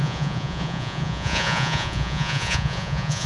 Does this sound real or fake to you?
fake